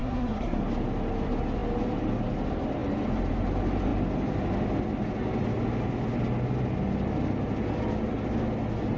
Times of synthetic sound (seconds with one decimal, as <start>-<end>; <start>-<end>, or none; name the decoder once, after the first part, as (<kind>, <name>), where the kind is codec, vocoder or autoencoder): 0.0-0.6 (codec, SNAC)